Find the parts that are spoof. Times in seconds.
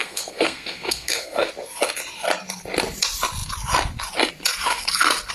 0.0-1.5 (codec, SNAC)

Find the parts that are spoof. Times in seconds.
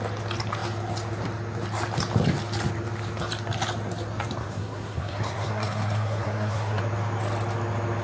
4.4-6.8 (codec, SNAC)